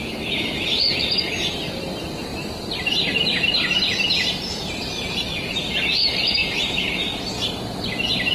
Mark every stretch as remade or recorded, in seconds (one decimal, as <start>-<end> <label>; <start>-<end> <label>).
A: 0.0-2.3 recorded; 2.3-5.7 remade; 5.7-8.3 recorded